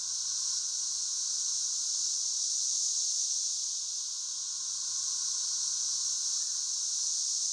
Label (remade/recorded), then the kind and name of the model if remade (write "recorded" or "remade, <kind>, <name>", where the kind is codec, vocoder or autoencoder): recorded